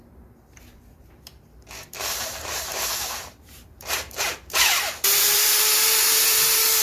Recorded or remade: remade